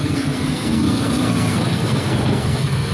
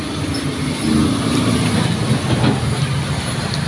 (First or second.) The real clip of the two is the second